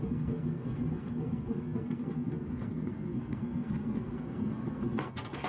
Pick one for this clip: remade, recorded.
remade